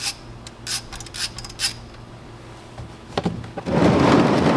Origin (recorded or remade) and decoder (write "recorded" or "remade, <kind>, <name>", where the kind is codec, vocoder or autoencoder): recorded